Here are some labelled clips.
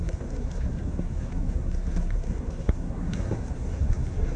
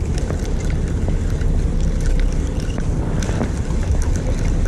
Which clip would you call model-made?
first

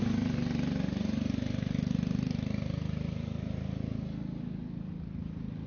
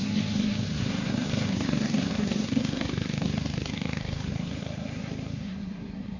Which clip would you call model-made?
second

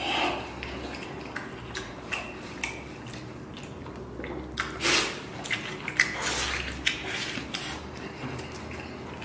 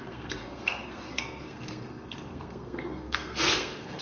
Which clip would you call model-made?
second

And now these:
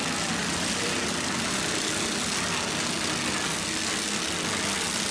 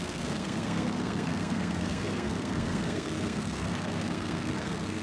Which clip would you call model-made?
second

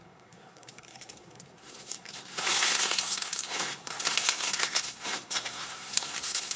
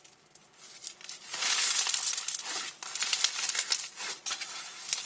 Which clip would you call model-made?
first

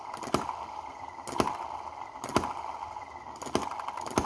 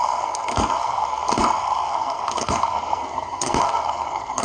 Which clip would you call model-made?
second